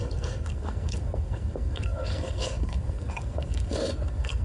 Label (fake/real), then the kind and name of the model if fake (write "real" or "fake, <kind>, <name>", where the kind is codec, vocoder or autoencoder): fake, codec, SNAC